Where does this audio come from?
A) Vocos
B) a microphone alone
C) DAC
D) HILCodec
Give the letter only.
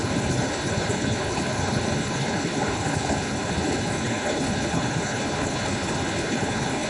D